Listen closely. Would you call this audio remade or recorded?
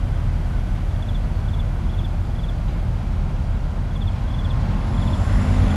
recorded